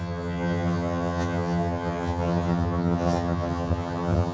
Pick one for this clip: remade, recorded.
remade